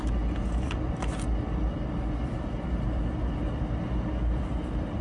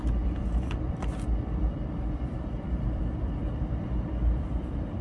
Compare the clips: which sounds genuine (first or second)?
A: first